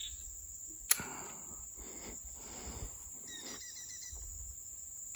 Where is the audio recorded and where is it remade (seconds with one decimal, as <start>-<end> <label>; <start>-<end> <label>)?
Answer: 0.0-5.2 recorded